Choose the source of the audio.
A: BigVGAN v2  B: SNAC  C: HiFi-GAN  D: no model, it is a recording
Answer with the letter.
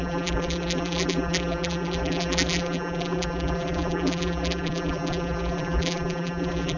A